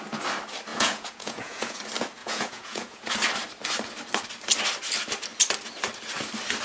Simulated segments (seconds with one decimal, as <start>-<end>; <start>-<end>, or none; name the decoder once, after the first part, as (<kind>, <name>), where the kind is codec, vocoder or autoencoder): 0.7-1.8 (vocoder, Vocos); 2.2-3.1